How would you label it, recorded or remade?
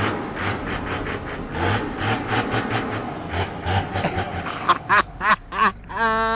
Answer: recorded